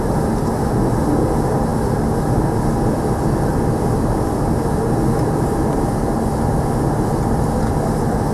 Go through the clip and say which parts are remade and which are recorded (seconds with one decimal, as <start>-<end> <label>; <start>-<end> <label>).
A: 0.0-8.3 recorded